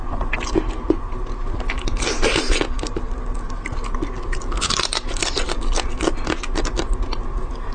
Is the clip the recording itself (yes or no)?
yes